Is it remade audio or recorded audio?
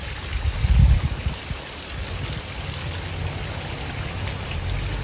recorded